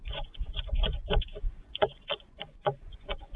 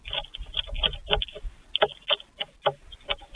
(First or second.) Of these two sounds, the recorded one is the second